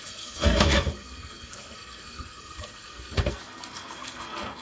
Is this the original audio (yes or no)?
no